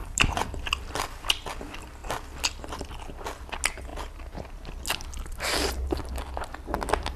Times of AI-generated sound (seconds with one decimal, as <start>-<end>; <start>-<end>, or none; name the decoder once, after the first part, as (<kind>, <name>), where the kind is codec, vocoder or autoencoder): 0.0-1.3 (vocoder, BigVGAN v2)